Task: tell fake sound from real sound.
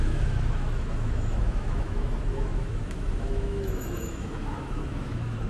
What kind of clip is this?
fake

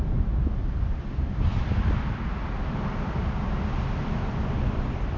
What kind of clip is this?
real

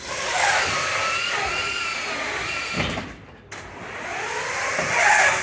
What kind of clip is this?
real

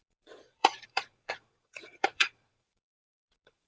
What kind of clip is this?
fake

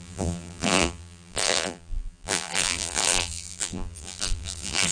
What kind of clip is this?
fake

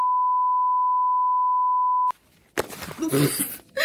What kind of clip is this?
real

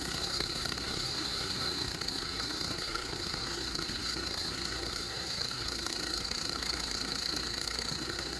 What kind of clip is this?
fake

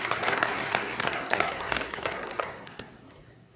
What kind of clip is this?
fake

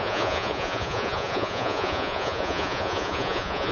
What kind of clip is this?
fake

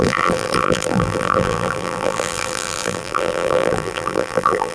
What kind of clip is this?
fake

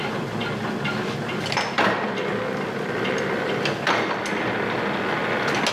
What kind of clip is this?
real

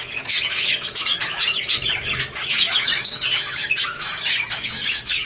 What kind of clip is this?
fake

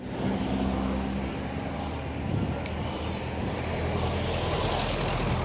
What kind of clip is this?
real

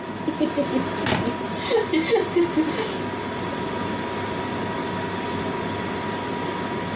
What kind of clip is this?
real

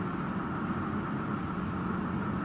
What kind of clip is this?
fake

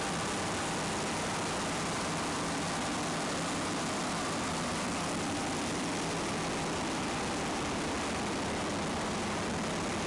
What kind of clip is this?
real